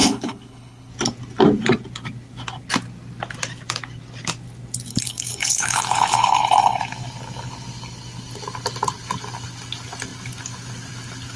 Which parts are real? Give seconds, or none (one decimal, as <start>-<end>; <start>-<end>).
0.9-4.9; 6.8-11.4